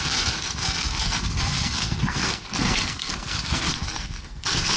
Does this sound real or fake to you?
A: fake